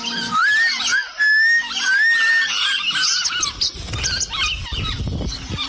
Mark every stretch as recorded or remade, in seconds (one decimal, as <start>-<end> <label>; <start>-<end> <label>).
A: 0.0-5.7 recorded